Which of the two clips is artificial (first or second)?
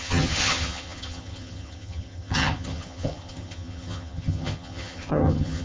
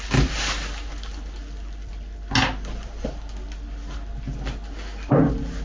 first